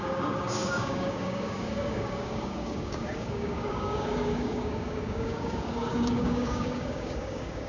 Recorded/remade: remade